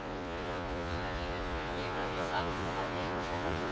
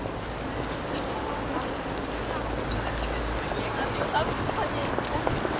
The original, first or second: second